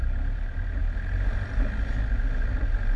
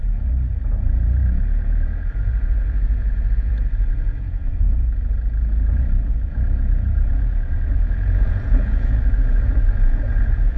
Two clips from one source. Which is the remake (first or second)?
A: second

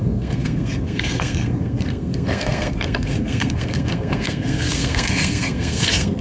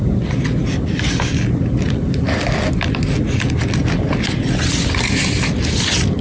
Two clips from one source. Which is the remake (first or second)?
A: first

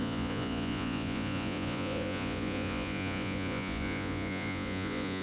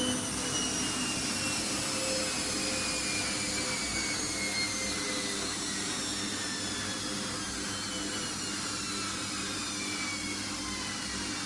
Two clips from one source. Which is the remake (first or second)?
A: first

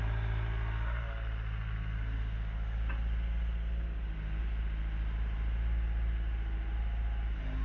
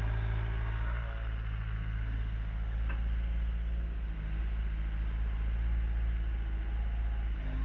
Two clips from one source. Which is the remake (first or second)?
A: first